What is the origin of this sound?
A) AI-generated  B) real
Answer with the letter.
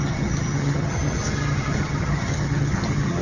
A